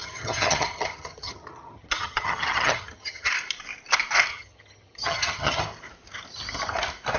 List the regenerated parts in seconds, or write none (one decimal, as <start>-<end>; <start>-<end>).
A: 0.0-3.3; 4.3-5.6